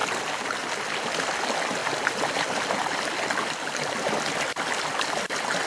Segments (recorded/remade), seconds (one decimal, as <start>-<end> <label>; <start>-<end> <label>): 0.0-5.7 recorded